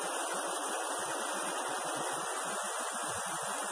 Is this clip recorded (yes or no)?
yes